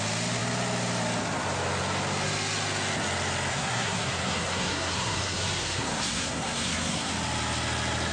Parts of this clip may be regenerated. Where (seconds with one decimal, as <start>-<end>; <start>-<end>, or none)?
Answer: 3.5-7.1